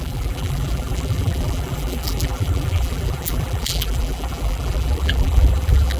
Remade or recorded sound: remade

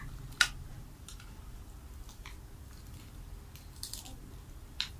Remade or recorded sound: recorded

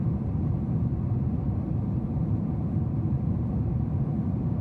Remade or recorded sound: remade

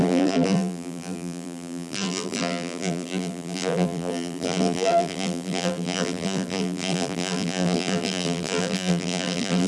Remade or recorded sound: remade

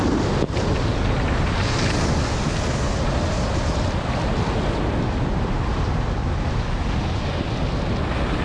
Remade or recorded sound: recorded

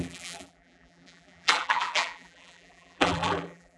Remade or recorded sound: remade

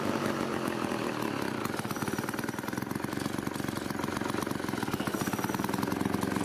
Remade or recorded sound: recorded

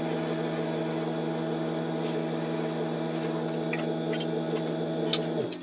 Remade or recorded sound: recorded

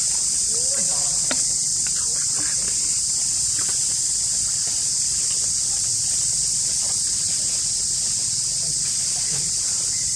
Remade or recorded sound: recorded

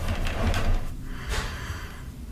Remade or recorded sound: remade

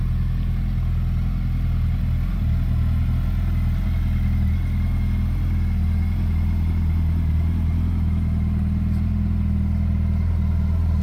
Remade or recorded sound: recorded